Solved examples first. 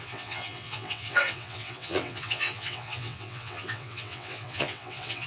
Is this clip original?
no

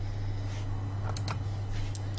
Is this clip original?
yes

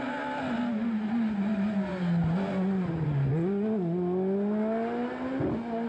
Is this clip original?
yes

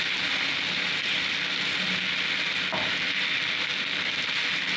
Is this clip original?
yes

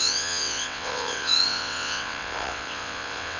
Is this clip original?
no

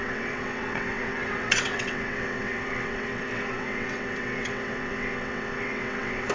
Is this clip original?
no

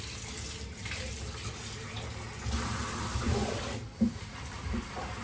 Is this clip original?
yes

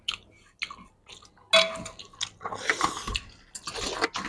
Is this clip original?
yes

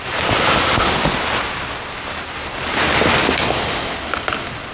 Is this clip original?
yes